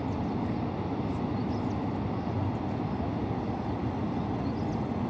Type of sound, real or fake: real